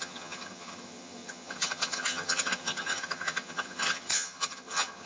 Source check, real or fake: fake